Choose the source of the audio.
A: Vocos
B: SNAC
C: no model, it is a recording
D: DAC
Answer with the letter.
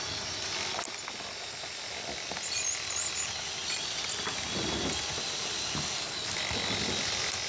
C